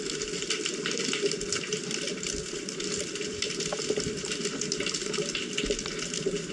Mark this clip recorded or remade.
recorded